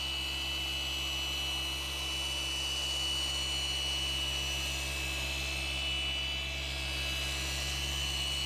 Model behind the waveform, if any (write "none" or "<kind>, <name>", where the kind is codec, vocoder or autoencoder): none